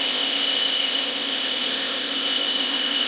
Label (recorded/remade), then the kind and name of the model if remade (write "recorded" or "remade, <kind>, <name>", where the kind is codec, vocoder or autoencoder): remade, codec, ZipCodec